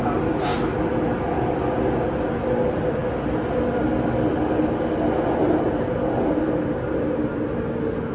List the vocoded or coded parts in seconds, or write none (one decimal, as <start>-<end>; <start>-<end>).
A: none